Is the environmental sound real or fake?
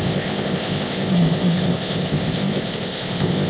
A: fake